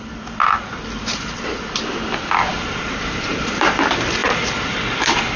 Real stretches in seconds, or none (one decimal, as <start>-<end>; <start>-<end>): 0.0-0.4; 1.4-2.5; 3.8-4.2; 4.8-5.4